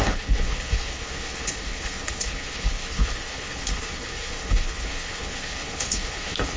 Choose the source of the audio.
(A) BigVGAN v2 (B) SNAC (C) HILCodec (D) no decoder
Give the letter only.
C